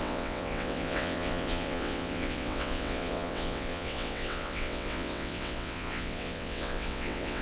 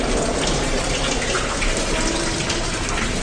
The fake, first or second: first